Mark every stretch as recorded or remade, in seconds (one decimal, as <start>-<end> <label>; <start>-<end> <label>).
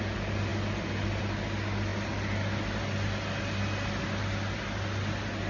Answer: 0.0-5.5 recorded